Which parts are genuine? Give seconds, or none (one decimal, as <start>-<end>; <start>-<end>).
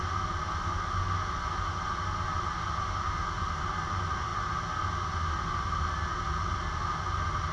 0.0-7.5